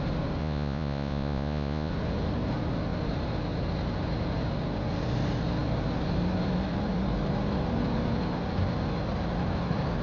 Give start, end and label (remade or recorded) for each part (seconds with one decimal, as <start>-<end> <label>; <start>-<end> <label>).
0.0-0.4 recorded; 0.4-1.9 remade; 1.9-10.0 recorded